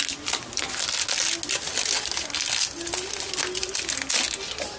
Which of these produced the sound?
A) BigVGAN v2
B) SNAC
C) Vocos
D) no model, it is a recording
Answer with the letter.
D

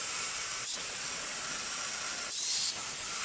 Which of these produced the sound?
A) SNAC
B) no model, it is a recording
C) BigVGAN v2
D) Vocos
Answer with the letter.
B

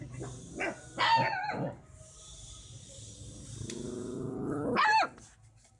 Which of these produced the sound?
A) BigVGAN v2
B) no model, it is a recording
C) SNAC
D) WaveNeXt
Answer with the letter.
B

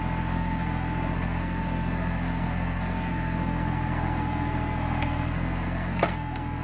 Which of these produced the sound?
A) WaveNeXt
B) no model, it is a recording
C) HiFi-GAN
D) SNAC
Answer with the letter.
D